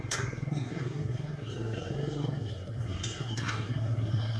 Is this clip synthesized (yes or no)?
yes